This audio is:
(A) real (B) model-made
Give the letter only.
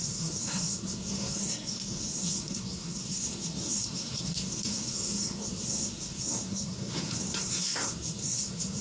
B